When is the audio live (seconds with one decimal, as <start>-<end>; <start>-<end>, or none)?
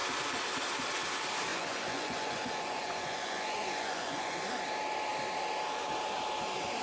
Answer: 0.0-1.5; 4.5-6.8